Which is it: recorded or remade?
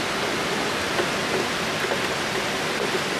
recorded